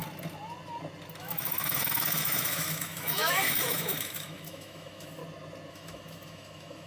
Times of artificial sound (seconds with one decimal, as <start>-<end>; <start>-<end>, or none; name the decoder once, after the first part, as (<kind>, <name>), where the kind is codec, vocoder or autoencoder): 1.2-5.2 (autoencoder, DAC-VAE); 5.7-6.9